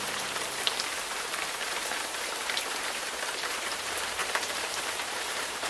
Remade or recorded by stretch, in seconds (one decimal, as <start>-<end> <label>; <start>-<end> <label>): 0.0-5.7 remade